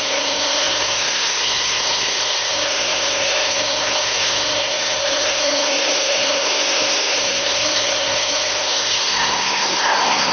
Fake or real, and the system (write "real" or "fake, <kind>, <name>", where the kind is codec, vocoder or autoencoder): fake, codec, SNAC